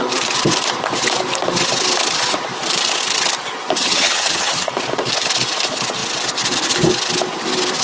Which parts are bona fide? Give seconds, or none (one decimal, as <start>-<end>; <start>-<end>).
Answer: 0.0-3.8; 4.7-7.8